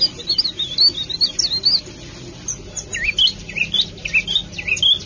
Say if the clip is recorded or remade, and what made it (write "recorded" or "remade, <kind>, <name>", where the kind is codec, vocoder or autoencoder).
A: recorded